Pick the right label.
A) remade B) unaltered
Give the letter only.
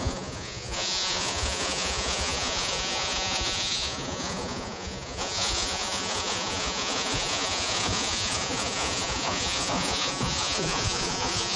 A